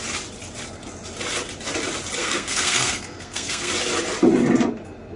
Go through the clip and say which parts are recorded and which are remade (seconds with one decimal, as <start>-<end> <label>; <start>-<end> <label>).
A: 0.0-2.2 recorded; 2.2-3.7 remade; 3.7-5.2 recorded